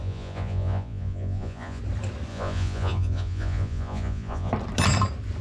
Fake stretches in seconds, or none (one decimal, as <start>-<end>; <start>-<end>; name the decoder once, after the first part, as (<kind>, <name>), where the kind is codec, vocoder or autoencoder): 0.0-1.8 (vocoder, Vocos); 2.3-4.5